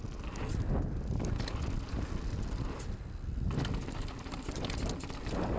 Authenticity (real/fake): real